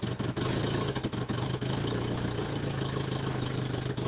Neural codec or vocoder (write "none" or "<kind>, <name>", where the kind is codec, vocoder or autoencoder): autoencoder, DAC-VAE